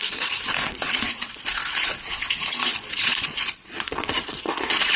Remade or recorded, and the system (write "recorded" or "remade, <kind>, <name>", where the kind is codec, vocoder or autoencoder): remade, vocoder, Vocos